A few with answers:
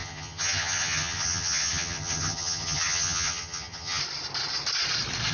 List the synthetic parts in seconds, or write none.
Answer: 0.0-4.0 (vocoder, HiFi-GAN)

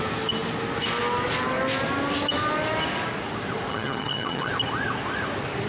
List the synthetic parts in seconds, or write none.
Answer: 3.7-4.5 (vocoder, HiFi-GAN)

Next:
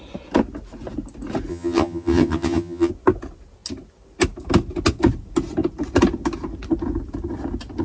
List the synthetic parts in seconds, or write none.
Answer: 1.5-2.9 (vocoder, HiFi-GAN)

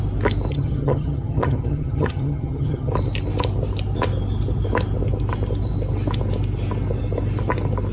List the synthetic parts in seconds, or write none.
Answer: 0.5-2.9 (vocoder, HiFi-GAN)

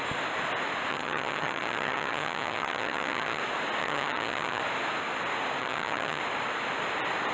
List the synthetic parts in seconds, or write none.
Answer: 0.9-3.4 (vocoder, HiFi-GAN); 3.8-4.6; 5.6-6.2

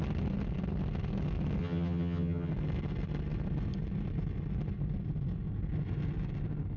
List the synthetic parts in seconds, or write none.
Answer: 1.6-2.5 (vocoder, HiFi-GAN)

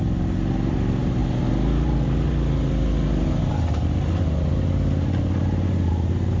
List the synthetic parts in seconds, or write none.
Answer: none

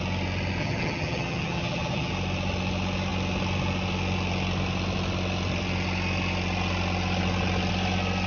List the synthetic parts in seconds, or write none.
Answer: 0.6-2.1 (vocoder, HiFi-GAN)